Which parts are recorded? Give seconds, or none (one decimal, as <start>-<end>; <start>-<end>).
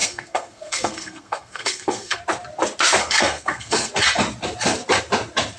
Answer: 2.2-3.0; 3.9-5.6